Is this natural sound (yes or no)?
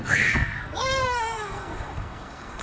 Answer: no